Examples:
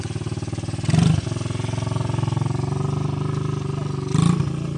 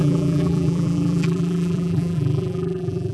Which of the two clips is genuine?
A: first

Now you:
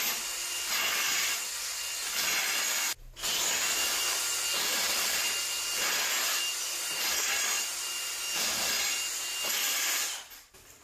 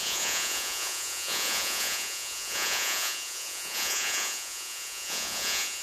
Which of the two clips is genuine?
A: first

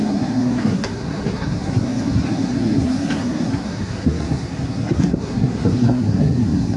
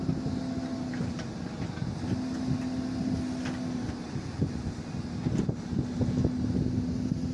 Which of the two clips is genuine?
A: second